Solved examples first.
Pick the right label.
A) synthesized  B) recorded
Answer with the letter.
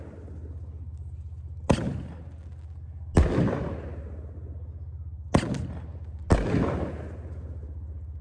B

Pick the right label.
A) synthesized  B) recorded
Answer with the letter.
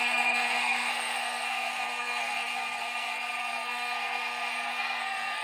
A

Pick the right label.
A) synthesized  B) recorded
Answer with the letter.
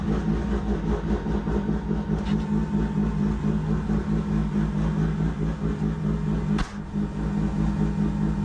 B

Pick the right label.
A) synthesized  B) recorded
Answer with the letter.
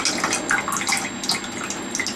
B